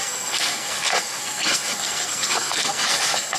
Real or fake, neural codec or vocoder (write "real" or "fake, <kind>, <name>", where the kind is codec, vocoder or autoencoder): fake, codec, SNAC